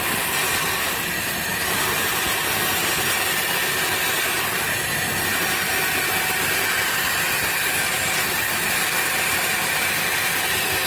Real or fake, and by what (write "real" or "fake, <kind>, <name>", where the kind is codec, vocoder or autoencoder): real